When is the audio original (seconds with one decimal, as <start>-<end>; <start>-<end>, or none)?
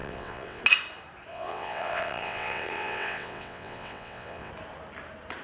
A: 0.6-1.3; 4.5-5.4